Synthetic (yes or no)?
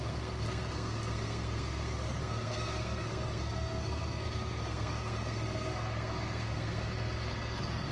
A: yes